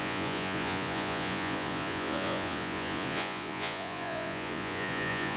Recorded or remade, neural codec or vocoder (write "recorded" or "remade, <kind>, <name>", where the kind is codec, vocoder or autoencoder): remade, vocoder, Vocos